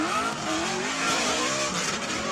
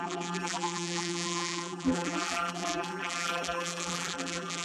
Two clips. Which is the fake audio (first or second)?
second